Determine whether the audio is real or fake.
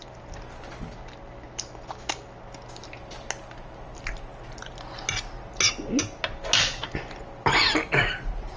real